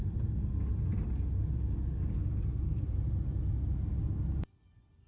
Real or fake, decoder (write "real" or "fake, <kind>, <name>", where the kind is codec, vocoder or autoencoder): real